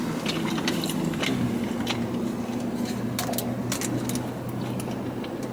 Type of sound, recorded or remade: recorded